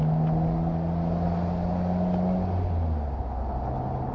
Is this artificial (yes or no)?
no